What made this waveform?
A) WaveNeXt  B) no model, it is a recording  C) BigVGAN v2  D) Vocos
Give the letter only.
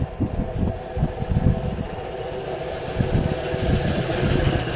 B